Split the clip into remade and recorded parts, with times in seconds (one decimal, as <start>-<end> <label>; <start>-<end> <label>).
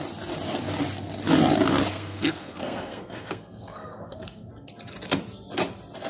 0.0-1.9 recorded; 1.9-4.5 remade; 4.5-6.1 recorded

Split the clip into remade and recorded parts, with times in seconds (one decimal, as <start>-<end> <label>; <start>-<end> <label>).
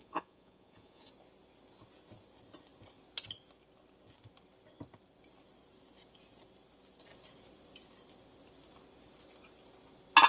0.0-1.1 remade; 1.1-10.3 recorded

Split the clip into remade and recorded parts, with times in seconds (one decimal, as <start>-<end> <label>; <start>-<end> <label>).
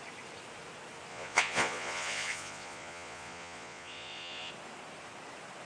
0.0-1.1 recorded; 1.1-4.5 remade; 4.5-5.7 recorded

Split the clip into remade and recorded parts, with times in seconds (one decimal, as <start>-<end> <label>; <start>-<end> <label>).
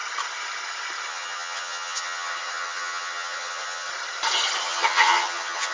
0.0-1.1 recorded; 1.1-3.9 remade; 3.9-4.6 recorded; 4.6-5.7 remade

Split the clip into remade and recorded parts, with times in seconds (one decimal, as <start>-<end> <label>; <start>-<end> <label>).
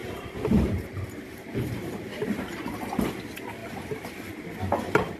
0.0-3.1 remade; 3.1-5.2 recorded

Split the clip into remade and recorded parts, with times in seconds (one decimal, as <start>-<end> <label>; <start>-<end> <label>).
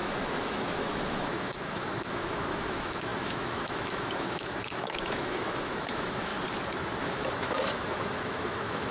0.0-6.3 remade; 6.3-7.0 recorded; 7.0-8.9 remade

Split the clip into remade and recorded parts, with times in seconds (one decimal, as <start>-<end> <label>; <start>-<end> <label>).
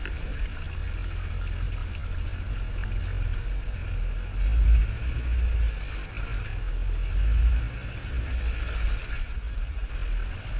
0.0-9.2 recorded; 9.2-9.9 remade; 9.9-10.6 recorded